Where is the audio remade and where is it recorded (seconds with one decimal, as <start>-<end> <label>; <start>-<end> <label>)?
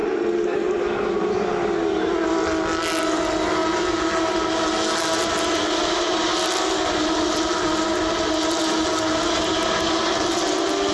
0.0-10.9 recorded